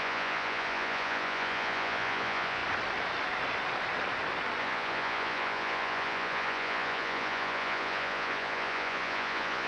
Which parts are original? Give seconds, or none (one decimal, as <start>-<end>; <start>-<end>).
2.6-4.6

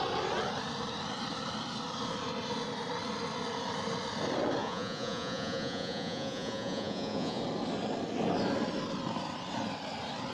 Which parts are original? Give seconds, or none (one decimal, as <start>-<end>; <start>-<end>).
0.0-4.6; 7.4-10.3

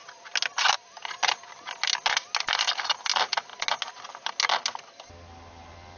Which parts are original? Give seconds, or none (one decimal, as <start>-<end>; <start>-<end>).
0.0-6.0

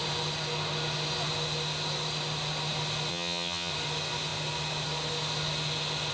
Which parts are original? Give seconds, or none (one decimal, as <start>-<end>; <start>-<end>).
0.0-3.1; 3.7-6.1

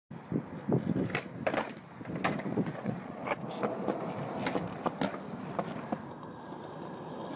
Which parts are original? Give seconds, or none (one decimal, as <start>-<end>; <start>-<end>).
0.0-2.5; 3.2-7.4

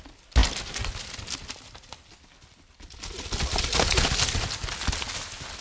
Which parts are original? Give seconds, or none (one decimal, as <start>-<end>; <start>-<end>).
0.0-5.6